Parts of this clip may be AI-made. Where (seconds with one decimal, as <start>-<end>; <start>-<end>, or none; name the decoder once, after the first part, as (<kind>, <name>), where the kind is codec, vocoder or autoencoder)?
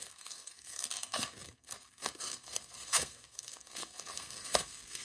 0.0-5.0 (codec, SNAC)